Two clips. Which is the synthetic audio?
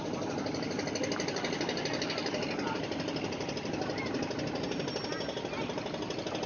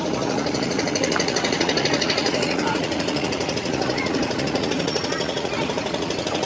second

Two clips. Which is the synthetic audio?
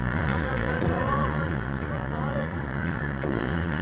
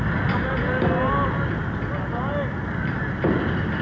first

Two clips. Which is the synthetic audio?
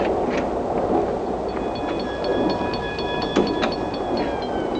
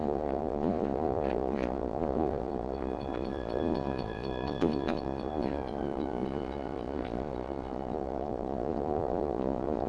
second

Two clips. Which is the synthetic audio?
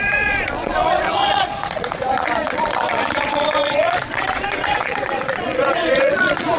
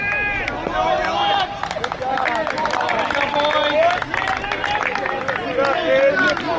first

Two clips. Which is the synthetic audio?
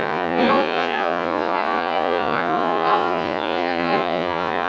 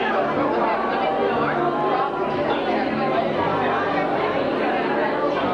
first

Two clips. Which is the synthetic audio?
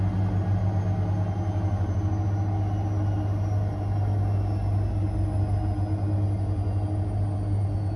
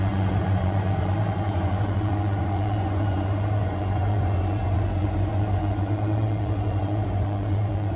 second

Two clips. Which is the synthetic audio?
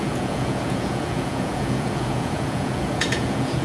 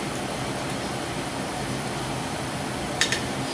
first